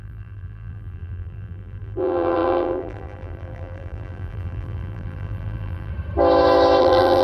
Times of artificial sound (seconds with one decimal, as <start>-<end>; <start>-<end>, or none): 0.0-5.9; 6.8-7.2